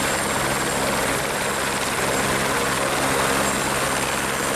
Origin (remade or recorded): recorded